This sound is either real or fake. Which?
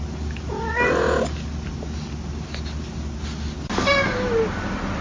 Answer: real